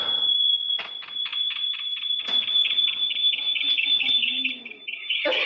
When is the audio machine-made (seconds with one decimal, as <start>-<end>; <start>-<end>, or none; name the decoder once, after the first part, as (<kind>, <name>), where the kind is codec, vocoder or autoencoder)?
none